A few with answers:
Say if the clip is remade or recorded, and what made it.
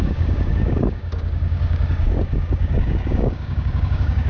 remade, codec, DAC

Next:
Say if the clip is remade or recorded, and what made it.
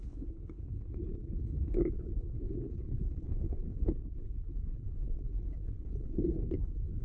remade, codec, HILCodec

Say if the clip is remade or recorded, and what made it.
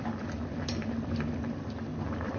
remade, vocoder, BigVGAN v2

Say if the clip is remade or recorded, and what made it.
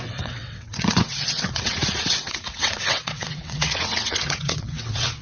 remade, vocoder, WaveNeXt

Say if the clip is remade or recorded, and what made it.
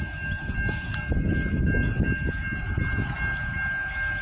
recorded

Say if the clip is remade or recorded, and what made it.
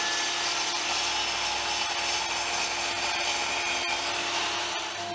recorded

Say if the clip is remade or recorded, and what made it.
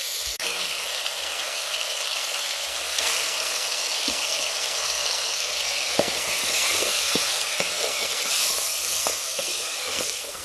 remade, codec, SNAC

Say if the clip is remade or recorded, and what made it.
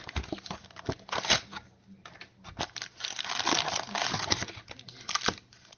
recorded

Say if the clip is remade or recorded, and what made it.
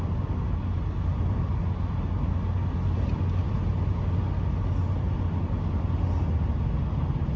recorded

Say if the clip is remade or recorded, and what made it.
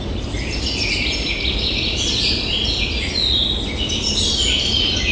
recorded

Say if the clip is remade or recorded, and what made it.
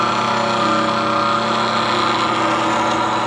recorded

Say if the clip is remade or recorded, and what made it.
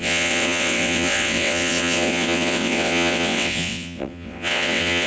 remade, vocoder, WaveNeXt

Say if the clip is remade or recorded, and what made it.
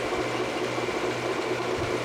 recorded